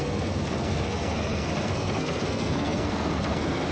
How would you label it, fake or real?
fake